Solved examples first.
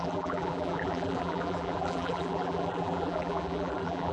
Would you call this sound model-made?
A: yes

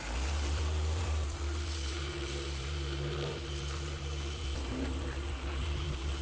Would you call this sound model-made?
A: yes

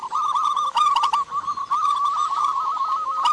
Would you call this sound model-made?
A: no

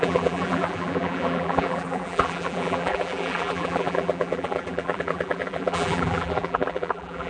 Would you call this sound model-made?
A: yes